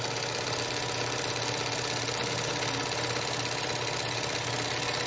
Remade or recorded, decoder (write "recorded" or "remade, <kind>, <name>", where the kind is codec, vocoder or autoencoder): recorded